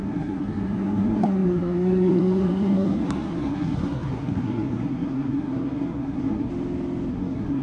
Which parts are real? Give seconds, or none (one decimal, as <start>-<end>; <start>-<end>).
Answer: 6.5-7.1